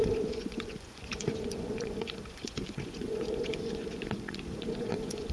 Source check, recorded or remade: remade